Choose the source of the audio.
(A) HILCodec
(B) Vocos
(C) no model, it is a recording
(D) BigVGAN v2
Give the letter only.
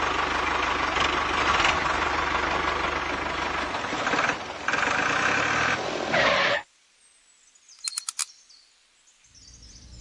C